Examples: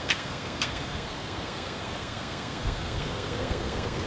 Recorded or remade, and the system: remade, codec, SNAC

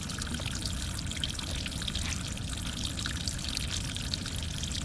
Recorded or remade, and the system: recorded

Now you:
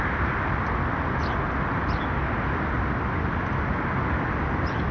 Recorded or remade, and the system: recorded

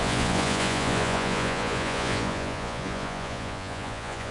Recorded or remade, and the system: remade, vocoder, Vocos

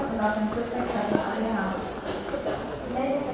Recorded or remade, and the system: recorded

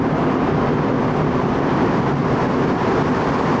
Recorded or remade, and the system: recorded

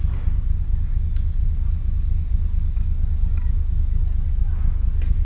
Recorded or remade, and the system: recorded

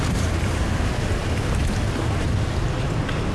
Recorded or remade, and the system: recorded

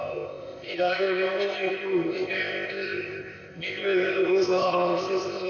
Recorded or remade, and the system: remade, codec, ZipCodec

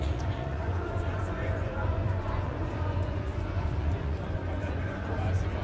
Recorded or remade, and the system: remade, vocoder, Vocos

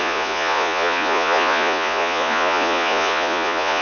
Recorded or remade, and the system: remade, vocoder, Vocos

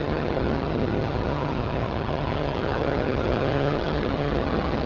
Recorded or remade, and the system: remade, vocoder, HiFi-GAN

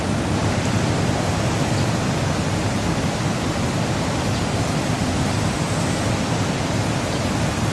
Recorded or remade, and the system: recorded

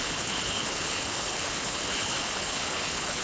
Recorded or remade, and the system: remade, codec, HILCodec